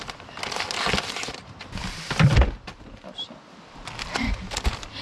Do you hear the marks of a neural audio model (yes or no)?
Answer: no